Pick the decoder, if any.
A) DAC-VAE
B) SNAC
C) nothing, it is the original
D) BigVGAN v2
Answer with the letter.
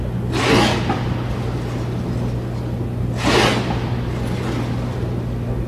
C